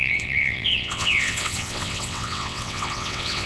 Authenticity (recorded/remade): remade